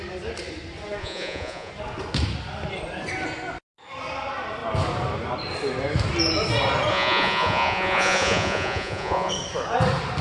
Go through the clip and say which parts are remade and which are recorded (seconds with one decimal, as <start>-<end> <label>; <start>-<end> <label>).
0.0-1.0 recorded; 1.0-1.7 remade; 1.7-6.9 recorded; 6.9-9.3 remade; 9.3-10.2 recorded